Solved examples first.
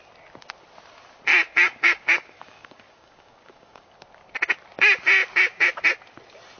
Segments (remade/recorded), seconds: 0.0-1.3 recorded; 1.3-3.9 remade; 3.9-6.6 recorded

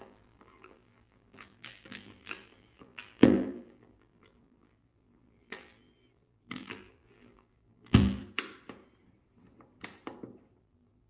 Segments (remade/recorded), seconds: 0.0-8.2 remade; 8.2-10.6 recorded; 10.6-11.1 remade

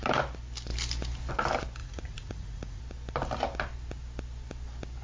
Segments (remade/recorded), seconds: 0.0-1.8 recorded; 1.8-2.8 remade; 2.8-5.0 recorded